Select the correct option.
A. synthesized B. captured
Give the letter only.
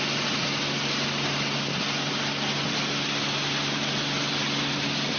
B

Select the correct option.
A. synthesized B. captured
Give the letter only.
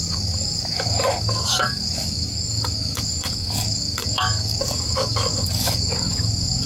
A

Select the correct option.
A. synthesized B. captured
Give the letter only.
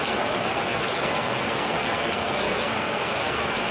A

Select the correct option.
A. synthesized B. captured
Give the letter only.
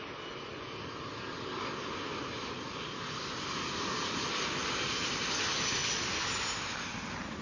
B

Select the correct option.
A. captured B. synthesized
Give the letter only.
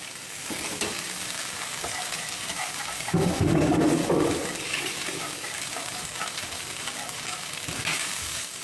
B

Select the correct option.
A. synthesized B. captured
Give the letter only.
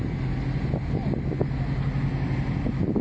B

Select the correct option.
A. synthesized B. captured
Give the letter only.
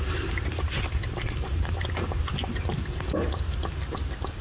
B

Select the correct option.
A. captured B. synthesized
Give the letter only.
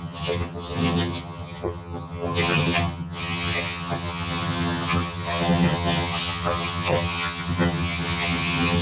B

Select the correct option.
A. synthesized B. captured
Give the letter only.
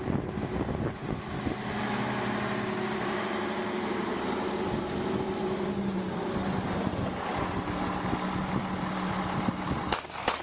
B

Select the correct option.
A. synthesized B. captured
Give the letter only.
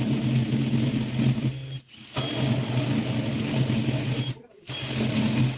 B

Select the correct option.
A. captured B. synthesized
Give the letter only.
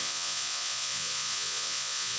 B